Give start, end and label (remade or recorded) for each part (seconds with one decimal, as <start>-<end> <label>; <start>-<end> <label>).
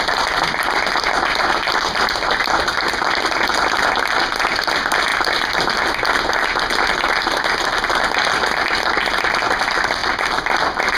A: 0.0-5.1 recorded; 5.1-5.7 remade; 5.7-10.0 recorded; 10.0-11.0 remade